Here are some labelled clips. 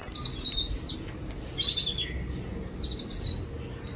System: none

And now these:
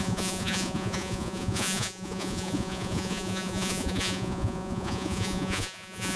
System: vocoder, Vocos